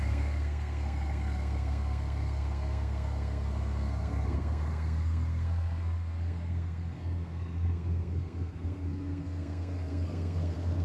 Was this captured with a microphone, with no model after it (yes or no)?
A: no